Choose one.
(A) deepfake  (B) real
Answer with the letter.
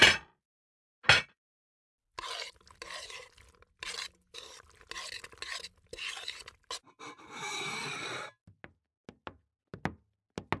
B